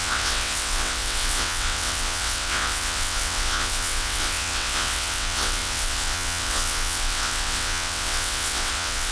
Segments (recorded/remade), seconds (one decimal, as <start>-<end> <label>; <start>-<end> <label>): 0.0-9.1 remade